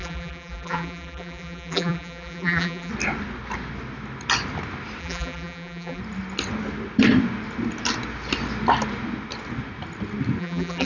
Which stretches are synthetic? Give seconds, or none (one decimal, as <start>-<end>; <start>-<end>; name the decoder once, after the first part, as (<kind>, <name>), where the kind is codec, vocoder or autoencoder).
0.0-2.9 (vocoder, BigVGAN v2); 5.0-6.0; 10.4-10.9